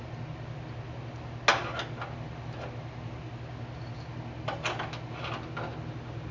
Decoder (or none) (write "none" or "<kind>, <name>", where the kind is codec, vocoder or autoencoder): none